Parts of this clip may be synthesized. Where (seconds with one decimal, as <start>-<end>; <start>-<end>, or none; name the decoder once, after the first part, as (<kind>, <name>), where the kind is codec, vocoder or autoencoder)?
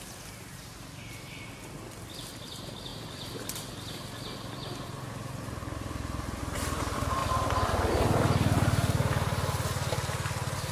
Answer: none